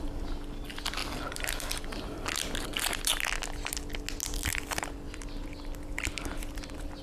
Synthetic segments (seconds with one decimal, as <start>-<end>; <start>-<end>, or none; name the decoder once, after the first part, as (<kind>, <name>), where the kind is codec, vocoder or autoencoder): 1.0-1.8 (vocoder, BigVGAN v2); 4.5-7.0